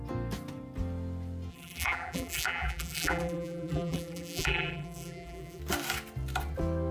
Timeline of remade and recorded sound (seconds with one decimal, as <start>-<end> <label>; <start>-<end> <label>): 0.0-1.5 recorded; 1.5-5.6 remade; 5.6-6.9 recorded